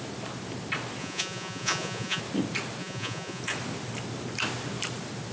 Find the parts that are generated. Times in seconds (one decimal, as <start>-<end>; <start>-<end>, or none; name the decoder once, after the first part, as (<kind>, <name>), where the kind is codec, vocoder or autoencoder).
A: 1.0-2.2 (vocoder, Vocos); 2.8-3.4